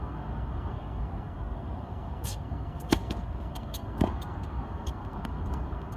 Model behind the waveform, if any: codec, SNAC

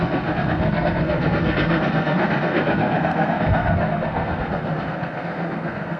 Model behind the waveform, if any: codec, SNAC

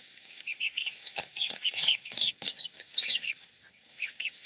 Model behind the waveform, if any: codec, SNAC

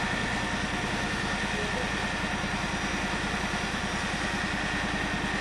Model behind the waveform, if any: none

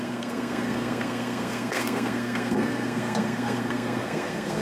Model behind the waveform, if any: codec, SNAC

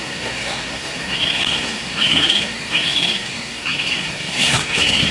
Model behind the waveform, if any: codec, SNAC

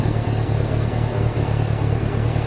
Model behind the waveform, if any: codec, SNAC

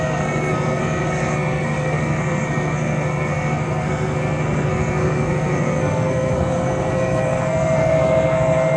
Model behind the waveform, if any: codec, SNAC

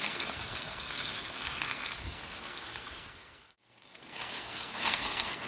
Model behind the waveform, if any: codec, SNAC